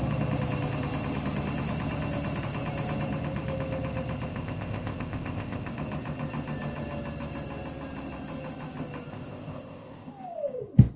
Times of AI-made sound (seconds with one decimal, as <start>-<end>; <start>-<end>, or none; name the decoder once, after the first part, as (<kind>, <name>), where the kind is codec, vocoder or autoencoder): 4.3-5.7 (codec, ZipCodec); 9.1-10.1